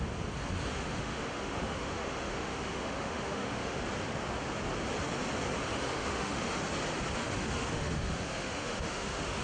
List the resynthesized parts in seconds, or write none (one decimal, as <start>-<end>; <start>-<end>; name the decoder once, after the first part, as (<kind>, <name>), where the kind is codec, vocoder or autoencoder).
0.7-3.8 (autoencoder, DAC-VAE); 5.7-6.6; 7.2-9.4